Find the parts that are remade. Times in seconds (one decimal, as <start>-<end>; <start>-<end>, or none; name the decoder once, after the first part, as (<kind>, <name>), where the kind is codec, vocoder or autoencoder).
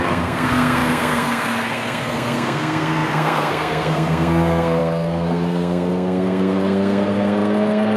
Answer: 0.0-8.0 (codec, SNAC)